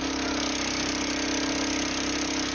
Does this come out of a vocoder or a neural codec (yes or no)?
no